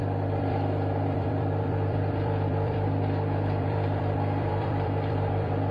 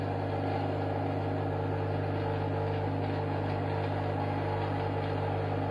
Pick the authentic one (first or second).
second